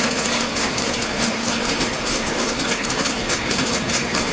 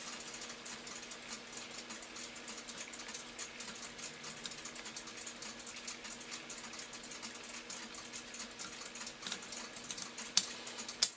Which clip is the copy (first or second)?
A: first